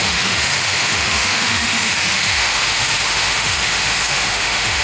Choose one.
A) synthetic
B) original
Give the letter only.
A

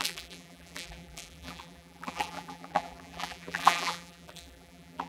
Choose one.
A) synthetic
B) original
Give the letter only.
A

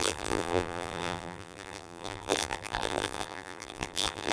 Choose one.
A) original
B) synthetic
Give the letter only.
B